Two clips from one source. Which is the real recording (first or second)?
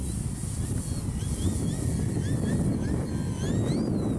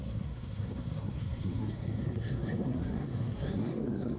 first